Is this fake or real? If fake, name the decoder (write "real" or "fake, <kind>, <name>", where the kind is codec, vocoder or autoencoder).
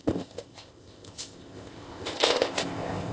fake, codec, ZipCodec